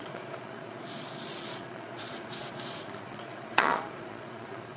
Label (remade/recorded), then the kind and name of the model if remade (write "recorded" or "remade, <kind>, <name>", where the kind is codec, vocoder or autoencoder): remade, vocoder, Vocos